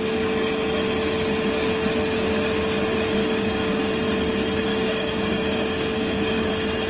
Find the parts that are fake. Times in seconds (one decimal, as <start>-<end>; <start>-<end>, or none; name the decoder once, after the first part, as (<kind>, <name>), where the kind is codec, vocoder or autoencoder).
3.2-3.9 (codec, DAC); 4.7-6.5